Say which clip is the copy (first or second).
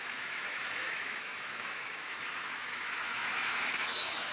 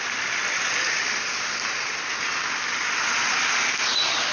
first